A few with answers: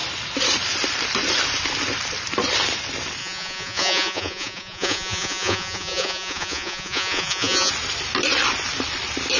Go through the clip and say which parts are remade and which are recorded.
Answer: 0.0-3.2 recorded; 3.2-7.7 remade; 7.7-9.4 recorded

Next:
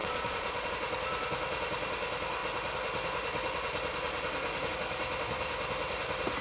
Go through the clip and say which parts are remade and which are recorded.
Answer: 0.0-0.7 remade; 0.7-6.4 recorded